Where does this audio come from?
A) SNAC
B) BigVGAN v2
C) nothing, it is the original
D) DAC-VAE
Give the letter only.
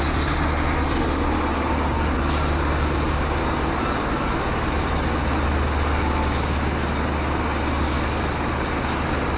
C